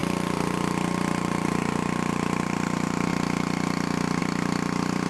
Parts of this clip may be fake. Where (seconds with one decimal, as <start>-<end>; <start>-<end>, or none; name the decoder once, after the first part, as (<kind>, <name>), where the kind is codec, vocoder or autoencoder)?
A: 0.0-3.1 (vocoder, BigVGAN v2); 4.2-5.1